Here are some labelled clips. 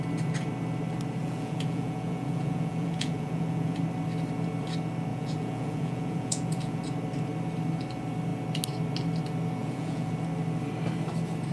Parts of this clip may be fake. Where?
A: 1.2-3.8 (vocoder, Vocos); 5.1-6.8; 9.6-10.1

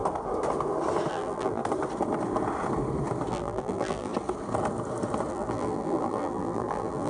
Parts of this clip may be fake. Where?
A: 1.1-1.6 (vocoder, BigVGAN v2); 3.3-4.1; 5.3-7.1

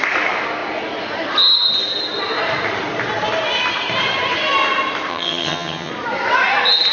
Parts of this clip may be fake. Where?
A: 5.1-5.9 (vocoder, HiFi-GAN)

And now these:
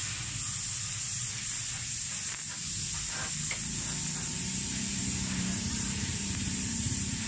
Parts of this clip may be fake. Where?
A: 4.4-7.3 (vocoder, BigVGAN v2)

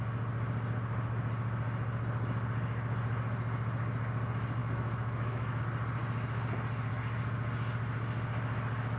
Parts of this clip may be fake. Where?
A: 4.6-5.6 (autoencoder, DAC-VAE)